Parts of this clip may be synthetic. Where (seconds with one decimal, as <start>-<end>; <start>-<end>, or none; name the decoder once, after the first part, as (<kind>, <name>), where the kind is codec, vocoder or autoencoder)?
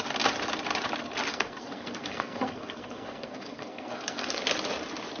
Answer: 1.3-4.4 (codec, SNAC)